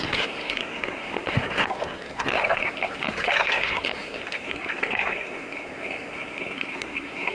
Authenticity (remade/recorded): remade